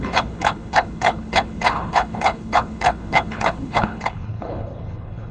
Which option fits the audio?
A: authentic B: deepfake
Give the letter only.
B